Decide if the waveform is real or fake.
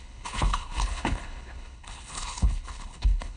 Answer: fake